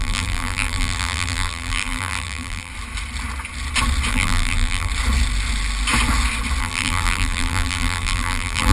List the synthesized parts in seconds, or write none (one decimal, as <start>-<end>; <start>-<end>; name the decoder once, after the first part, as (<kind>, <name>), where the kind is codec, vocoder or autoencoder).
0.0-2.7 (vocoder, BigVGAN v2); 4.1-4.9; 6.6-8.7